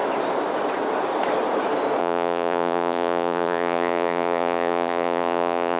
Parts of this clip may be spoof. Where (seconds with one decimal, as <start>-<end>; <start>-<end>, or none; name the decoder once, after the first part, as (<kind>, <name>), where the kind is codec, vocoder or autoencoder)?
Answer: 2.0-5.8 (vocoder, BigVGAN v2)